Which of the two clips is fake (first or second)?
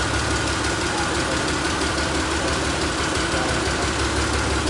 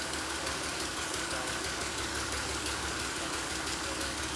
second